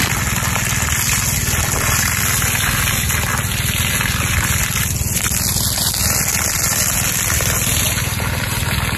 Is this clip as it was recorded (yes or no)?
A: yes